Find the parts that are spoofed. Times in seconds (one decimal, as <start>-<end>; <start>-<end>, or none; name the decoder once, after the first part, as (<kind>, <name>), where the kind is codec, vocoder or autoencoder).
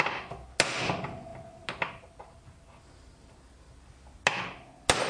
none